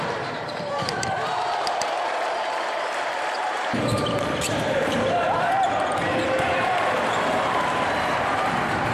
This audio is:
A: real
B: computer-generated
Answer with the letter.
B